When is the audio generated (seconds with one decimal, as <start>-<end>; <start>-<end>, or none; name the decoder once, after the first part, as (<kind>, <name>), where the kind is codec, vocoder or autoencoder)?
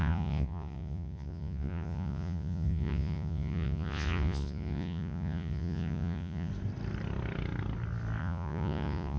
0.0-6.5 (vocoder, Vocos); 8.2-9.2